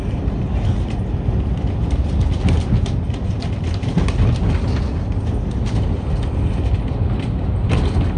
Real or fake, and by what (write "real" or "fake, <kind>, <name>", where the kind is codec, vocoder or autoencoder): real